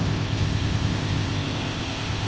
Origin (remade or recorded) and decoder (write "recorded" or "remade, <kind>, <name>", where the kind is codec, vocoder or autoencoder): remade, codec, ZipCodec